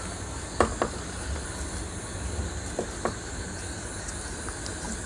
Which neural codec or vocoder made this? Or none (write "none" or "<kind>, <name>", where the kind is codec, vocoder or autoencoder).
none